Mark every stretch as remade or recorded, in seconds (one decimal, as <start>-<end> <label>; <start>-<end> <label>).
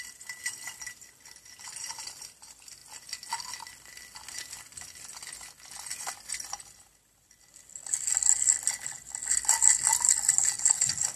0.0-11.2 recorded